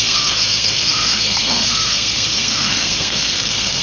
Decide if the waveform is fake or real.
fake